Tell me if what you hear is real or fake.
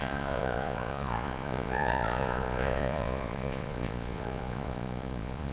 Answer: fake